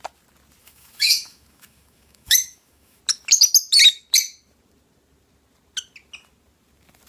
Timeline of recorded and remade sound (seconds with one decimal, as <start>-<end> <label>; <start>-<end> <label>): 0.0-0.6 recorded; 0.6-3.0 remade; 3.0-7.1 recorded